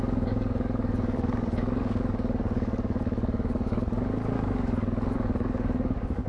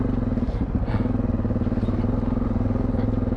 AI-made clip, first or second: first